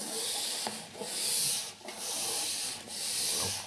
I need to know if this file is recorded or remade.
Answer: remade